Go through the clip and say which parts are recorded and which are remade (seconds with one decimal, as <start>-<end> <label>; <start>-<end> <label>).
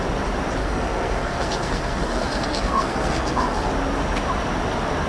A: 0.0-0.6 recorded; 0.6-3.7 remade; 3.7-5.1 recorded